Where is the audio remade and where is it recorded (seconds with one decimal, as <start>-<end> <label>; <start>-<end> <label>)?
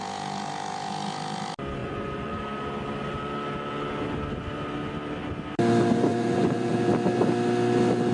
0.0-1.8 recorded; 1.8-2.4 remade; 2.4-6.1 recorded; 6.1-6.9 remade; 6.9-8.1 recorded